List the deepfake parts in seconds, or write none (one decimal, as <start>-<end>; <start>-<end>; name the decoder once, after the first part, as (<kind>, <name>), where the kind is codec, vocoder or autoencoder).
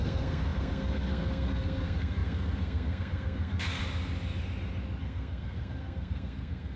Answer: 0.0-3.8 (codec, SNAC); 5.0-6.8